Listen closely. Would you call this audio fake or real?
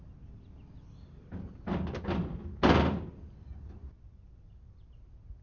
real